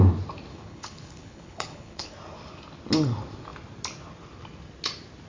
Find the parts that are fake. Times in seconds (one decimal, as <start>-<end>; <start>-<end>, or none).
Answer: 0.5-2.1